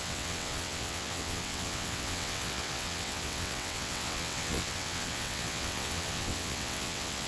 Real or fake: fake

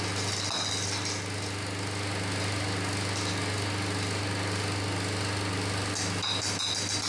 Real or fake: real